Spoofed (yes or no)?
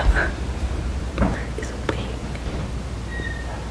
no